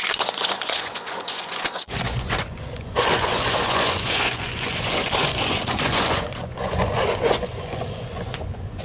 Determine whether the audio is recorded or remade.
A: remade